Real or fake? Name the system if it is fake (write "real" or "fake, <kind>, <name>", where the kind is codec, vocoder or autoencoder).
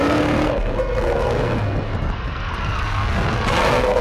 fake, codec, SNAC